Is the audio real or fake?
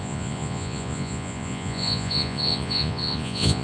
fake